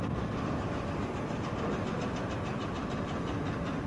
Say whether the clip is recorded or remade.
recorded